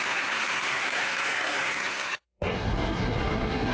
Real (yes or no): no